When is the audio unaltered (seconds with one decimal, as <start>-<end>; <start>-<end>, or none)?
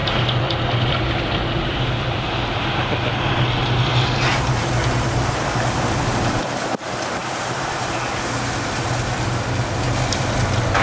0.0-3.9; 4.7-7.2; 8.0-10.8